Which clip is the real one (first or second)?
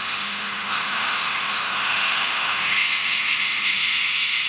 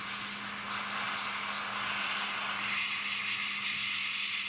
second